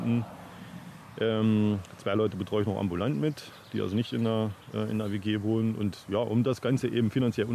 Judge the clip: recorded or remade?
recorded